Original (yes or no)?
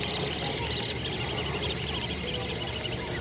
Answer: yes